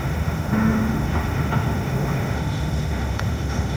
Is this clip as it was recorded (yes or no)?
no